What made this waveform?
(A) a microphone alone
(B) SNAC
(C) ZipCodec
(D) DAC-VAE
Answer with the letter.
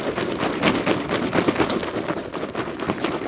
A